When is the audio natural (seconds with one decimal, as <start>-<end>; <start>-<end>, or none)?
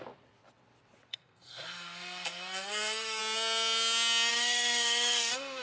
0.0-1.1; 3.2-4.3